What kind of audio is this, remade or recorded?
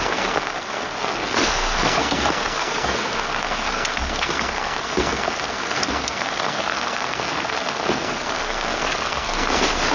remade